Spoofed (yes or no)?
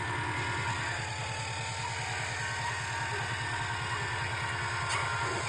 no